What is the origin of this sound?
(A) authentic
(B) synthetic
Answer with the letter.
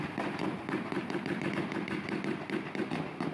A